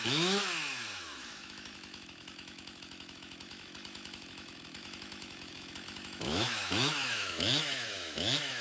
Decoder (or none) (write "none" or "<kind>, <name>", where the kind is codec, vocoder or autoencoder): autoencoder, DAC-VAE